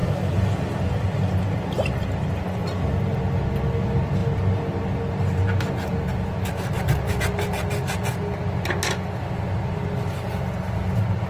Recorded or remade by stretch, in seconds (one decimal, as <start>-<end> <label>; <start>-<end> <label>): 0.0-11.3 recorded